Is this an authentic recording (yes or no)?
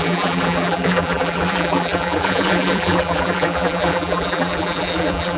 no